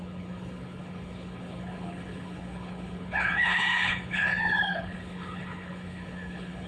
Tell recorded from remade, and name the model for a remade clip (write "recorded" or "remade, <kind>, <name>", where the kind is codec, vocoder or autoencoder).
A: remade, codec, HILCodec